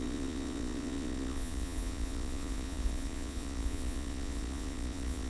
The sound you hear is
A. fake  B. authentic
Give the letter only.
A